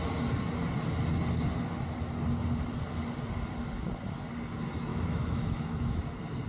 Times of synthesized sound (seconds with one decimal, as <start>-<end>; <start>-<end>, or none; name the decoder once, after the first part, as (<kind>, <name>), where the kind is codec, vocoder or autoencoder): 4.9-6.0 (autoencoder, DAC-VAE)